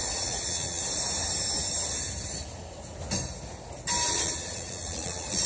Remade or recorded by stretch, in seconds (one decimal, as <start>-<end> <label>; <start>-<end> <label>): 0.0-0.8 remade; 0.8-4.1 recorded; 4.1-5.5 remade